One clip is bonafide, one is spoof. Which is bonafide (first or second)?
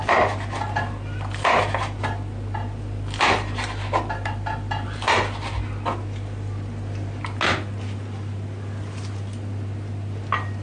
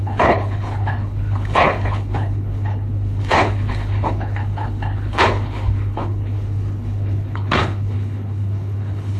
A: first